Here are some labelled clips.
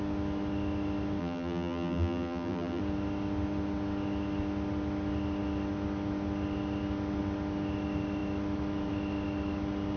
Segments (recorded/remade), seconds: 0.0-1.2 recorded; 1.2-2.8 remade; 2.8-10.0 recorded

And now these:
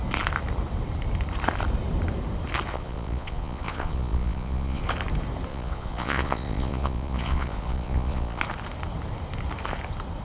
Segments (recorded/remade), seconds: 0.0-2.7 recorded; 2.7-4.8 remade; 4.8-5.5 recorded; 5.5-8.4 remade; 8.4-10.2 recorded

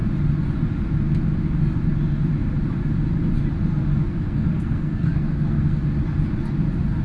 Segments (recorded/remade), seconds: 0.0-4.0 recorded; 4.0-5.8 remade; 5.8-7.0 recorded

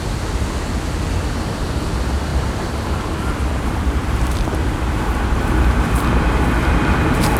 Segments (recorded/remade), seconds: 0.0-2.3 recorded; 2.3-6.7 remade; 6.7-7.4 recorded

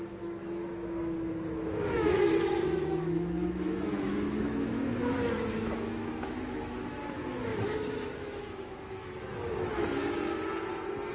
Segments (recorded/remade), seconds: 0.0-10.0 remade; 10.0-11.1 recorded

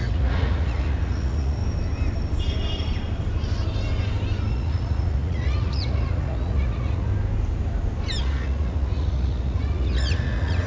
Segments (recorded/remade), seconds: 0.0-1.6 remade; 1.6-4.5 recorded; 4.5-7.1 remade; 7.1-8.2 recorded; 8.2-10.7 remade

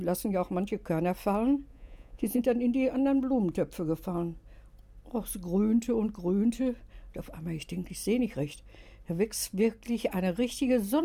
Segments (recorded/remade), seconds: 0.0-1.7 recorded; 1.7-2.4 remade; 2.4-11.0 recorded